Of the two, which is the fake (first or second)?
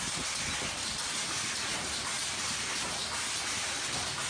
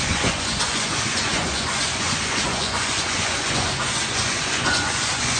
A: second